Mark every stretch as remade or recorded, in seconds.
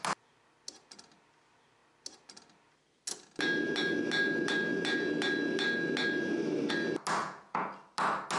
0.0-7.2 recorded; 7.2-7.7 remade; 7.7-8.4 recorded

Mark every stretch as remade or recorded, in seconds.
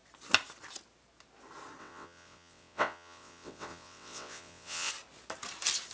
0.0-1.8 recorded; 1.8-4.9 remade; 4.9-5.9 recorded